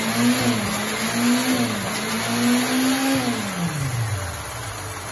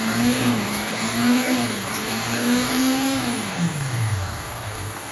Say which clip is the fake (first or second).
second